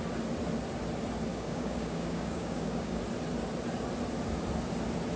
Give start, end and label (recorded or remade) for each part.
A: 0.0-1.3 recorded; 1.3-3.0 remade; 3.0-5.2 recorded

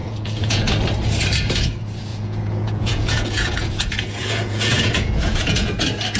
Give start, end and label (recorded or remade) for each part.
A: 0.0-0.7 remade; 0.7-2.1 recorded; 2.1-5.8 remade; 5.8-6.2 recorded

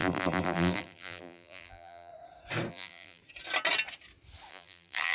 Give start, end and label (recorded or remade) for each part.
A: 0.0-2.1 remade; 2.1-2.7 recorded; 2.7-3.2 remade; 3.2-4.5 recorded; 4.5-5.1 remade